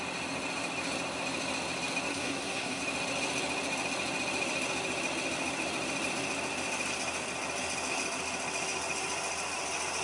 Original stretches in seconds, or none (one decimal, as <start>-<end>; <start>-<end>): 0.0-2.1; 2.8-10.0